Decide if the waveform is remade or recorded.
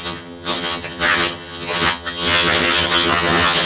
remade